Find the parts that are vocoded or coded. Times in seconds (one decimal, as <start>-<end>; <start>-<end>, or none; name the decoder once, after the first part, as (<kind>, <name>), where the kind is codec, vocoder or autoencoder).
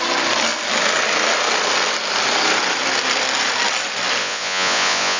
4.2-5.2 (vocoder, Vocos)